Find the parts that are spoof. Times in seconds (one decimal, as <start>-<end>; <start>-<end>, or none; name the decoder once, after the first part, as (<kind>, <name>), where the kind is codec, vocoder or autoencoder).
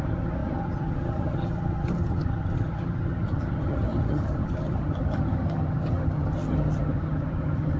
0.0-7.8 (vocoder, HiFi-GAN)